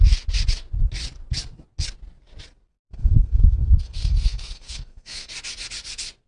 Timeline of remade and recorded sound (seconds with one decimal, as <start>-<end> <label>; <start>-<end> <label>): 0.0-2.7 recorded; 2.7-5.3 remade; 5.3-6.3 recorded